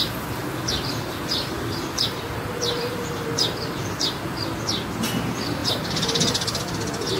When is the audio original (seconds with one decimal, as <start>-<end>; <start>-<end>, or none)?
0.0-0.4; 3.3-5.6; 6.6-7.2